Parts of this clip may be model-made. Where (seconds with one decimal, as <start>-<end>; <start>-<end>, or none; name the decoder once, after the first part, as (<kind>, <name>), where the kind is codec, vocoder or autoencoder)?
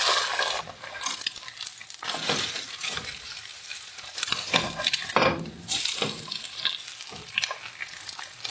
1.8-6.6 (vocoder, BigVGAN v2)